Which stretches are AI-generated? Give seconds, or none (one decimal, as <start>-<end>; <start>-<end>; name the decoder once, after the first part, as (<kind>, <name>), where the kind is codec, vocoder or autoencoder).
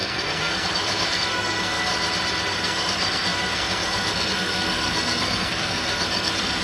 0.0-1.9 (codec, SNAC); 2.5-6.6